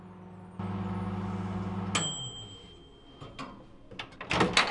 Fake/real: real